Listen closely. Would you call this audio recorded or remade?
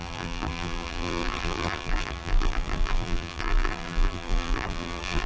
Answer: remade